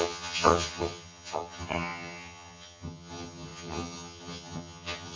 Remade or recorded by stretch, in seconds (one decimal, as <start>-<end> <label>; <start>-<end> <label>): 0.0-5.2 remade

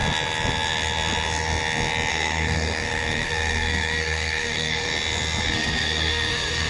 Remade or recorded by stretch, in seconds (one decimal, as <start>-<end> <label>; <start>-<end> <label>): 0.0-2.1 recorded; 2.1-4.9 remade; 4.9-5.4 recorded; 5.4-6.7 remade

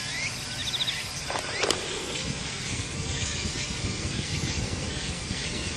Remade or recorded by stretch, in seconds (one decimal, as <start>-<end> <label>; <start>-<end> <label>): 0.0-1.9 recorded; 1.9-5.8 remade